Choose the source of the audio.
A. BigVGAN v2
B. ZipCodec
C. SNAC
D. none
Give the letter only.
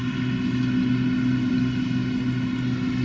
D